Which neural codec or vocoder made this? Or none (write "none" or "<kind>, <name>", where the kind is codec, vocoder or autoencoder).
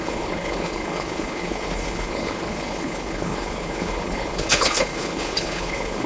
codec, HILCodec